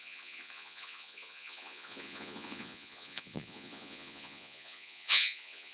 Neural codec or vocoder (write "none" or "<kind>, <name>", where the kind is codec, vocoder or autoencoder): vocoder, Vocos